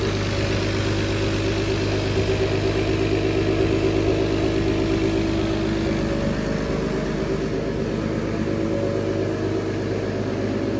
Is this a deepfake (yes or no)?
no